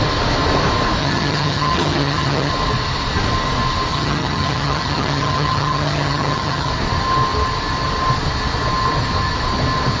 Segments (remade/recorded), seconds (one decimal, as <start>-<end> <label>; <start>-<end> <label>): 0.0-1.0 recorded; 1.0-2.5 remade; 2.5-3.9 recorded; 3.9-6.7 remade; 6.7-10.0 recorded